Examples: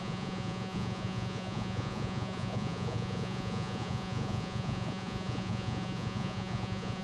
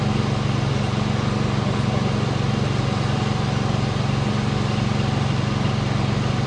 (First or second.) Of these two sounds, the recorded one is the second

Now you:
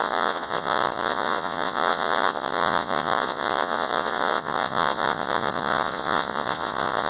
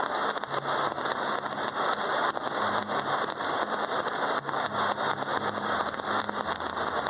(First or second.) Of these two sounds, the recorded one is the second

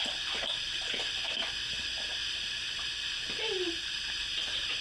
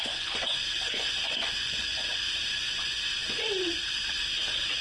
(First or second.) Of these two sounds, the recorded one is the first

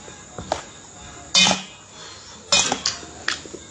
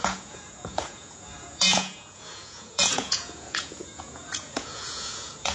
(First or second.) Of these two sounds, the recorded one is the first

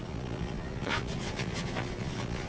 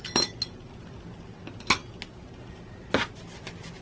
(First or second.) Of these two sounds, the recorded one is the second